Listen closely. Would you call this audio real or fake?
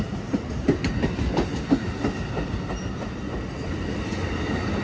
real